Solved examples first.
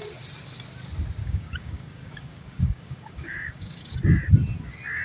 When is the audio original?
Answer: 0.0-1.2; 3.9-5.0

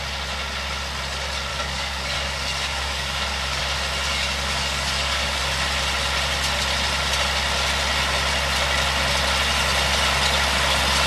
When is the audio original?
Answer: 0.0-1.5; 3.6-4.1; 5.4-11.1

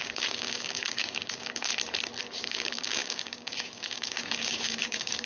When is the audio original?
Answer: 1.7-2.2

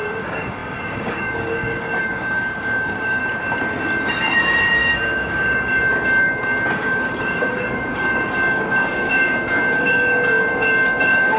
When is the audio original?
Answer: 3.2-4.1

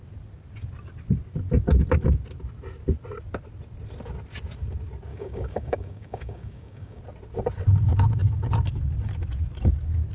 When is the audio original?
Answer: 0.0-5.1; 7.0-10.1

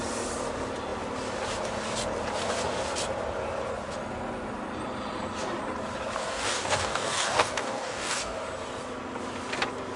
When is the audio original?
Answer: 0.0-6.2; 8.4-10.0

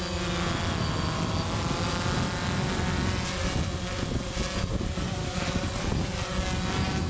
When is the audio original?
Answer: 0.0-5.2; 5.7-7.1

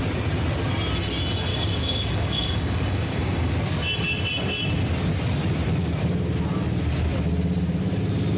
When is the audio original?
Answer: 0.0-1.5; 3.5-8.4